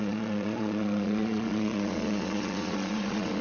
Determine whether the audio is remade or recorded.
remade